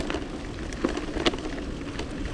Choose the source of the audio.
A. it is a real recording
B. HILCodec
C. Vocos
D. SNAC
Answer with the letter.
A